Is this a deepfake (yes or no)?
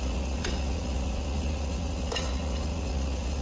yes